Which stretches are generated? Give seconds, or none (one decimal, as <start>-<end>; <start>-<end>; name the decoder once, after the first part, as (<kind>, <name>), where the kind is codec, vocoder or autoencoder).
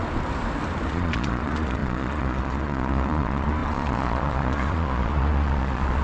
0.9-6.0 (vocoder, Vocos)